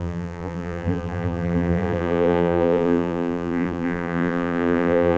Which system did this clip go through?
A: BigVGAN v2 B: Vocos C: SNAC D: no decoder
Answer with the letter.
A